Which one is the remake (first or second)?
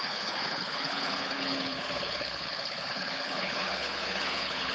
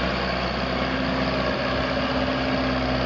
first